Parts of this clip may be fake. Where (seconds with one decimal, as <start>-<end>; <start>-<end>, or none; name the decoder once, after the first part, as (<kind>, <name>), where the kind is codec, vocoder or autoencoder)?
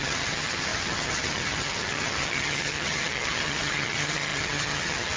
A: 0.0-5.2 (vocoder, HiFi-GAN)